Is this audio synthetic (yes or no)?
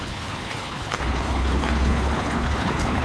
yes